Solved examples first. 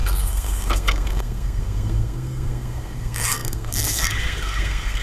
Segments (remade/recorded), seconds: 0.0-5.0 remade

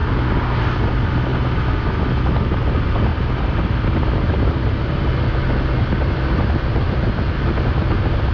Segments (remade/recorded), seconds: 0.0-3.1 recorded; 3.1-5.1 remade; 5.1-8.3 recorded